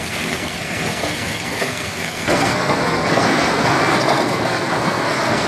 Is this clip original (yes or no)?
no